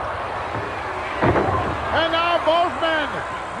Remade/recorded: recorded